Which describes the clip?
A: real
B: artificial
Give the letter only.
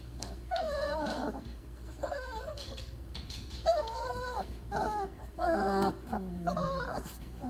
B